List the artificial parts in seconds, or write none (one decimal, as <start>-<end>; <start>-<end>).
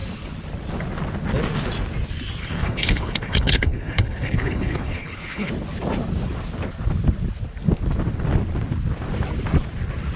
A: 2.4-5.5